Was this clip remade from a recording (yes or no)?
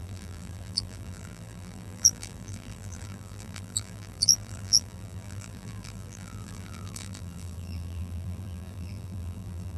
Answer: yes